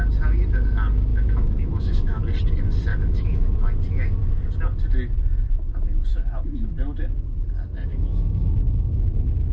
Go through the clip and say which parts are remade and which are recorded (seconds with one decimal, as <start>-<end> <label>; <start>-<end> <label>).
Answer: 0.0-1.1 recorded; 1.1-2.2 remade; 2.2-2.9 recorded; 2.9-3.5 remade; 3.5-6.1 recorded; 6.1-6.7 remade; 6.7-7.9 recorded; 7.9-8.5 remade; 8.5-9.5 recorded